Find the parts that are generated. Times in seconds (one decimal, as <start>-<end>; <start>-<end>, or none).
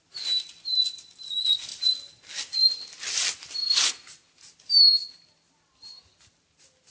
none